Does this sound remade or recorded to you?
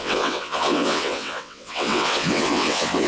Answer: remade